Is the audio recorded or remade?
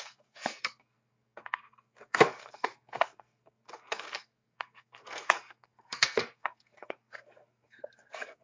remade